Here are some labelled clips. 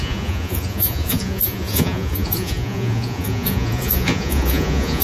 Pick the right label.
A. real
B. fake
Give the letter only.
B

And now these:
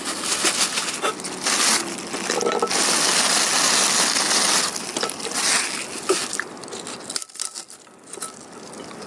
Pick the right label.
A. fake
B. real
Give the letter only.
B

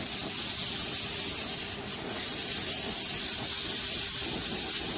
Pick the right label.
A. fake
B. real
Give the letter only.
B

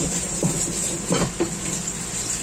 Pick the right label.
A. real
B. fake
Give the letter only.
A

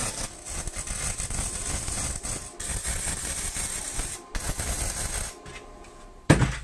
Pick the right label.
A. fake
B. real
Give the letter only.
B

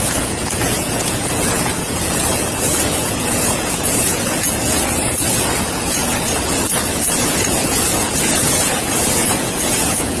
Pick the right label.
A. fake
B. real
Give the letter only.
A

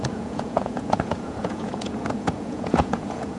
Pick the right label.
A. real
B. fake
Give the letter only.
B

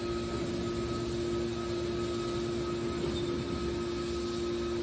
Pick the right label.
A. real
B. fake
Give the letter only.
A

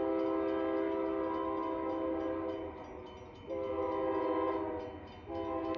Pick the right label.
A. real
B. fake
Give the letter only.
A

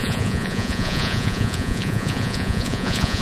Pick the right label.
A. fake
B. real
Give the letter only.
A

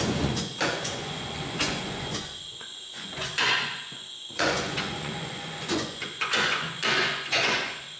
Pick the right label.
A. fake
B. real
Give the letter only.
A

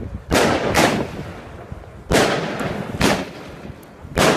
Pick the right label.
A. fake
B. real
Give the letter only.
B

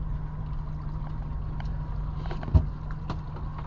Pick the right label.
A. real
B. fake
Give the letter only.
A